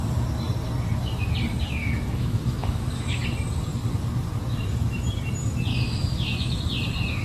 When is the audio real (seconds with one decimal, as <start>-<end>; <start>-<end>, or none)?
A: 0.0-1.8; 3.2-5.7; 6.6-7.2